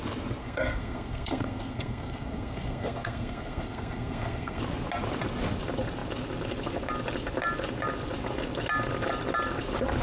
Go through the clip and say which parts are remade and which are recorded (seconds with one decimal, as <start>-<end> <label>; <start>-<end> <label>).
0.0-0.4 recorded; 0.4-4.6 remade; 4.6-10.0 recorded